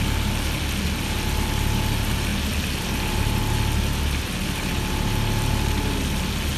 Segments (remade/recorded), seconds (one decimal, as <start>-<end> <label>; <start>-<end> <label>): 0.0-6.6 recorded